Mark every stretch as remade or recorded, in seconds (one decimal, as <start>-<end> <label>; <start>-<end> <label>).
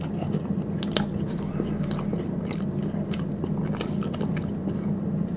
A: 0.0-5.4 recorded